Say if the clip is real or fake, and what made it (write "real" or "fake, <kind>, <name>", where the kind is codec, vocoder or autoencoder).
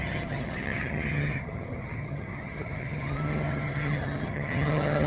fake, vocoder, HiFi-GAN